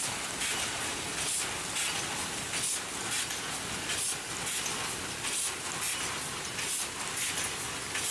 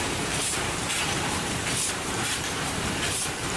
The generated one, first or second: second